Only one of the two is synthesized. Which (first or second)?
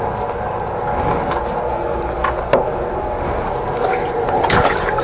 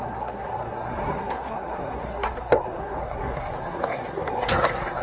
second